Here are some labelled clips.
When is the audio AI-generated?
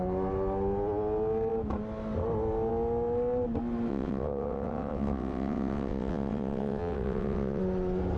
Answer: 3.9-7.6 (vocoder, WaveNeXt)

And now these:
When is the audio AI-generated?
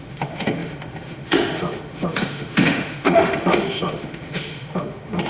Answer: 0.0-5.3 (autoencoder, DAC-VAE)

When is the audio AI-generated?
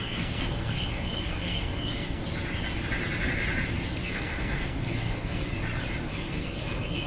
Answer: 0.0-2.2 (codec, SNAC); 4.0-5.6; 6.1-7.1